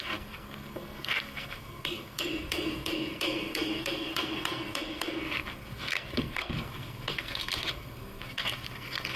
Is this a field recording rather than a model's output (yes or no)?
no